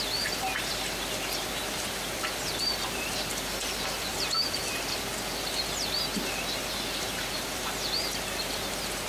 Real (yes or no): yes